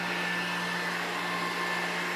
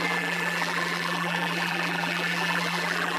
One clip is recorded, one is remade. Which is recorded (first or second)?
first